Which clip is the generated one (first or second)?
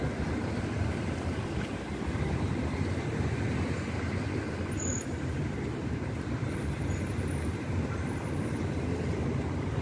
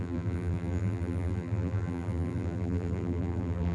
second